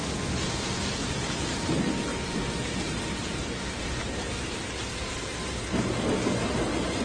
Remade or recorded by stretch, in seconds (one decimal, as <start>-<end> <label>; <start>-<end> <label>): 0.0-0.9 remade; 0.9-2.1 recorded; 2.1-3.4 remade; 3.4-4.0 recorded; 4.0-5.1 remade; 5.1-7.0 recorded